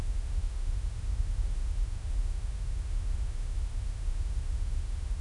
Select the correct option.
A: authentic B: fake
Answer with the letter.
B